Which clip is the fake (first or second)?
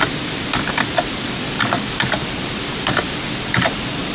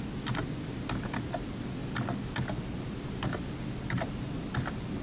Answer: first